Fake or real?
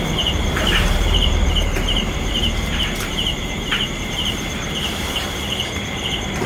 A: fake